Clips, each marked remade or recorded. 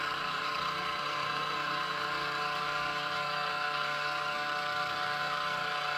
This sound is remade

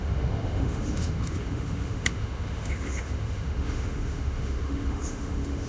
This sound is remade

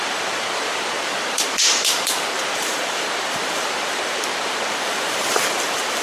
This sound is remade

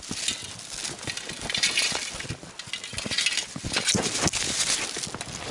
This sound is recorded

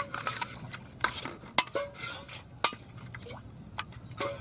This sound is recorded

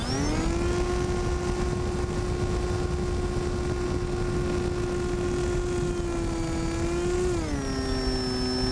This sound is recorded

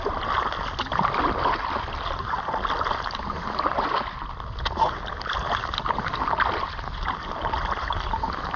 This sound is recorded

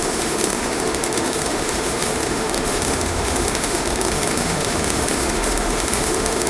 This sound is remade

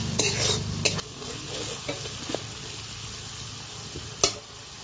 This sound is recorded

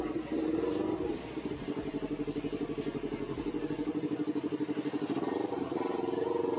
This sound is recorded